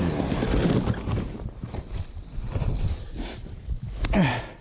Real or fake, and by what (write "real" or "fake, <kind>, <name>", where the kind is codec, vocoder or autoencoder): fake, vocoder, BigVGAN v2